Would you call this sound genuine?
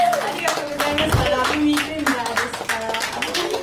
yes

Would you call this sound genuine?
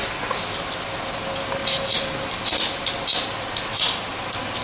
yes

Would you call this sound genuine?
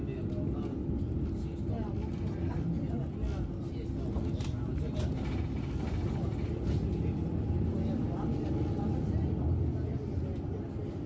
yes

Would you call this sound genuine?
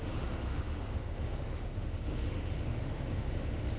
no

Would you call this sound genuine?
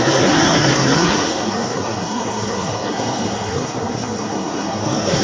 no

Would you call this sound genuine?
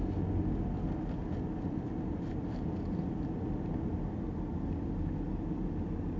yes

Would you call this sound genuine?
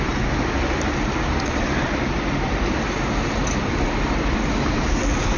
yes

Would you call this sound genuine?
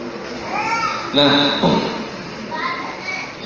yes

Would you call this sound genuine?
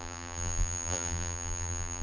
no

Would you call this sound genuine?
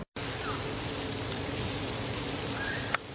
yes